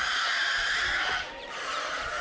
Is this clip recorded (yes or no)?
yes